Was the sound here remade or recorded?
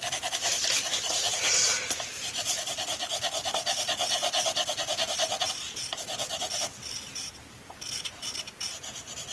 recorded